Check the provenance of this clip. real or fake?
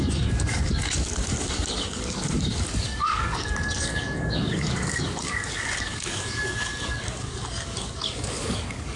fake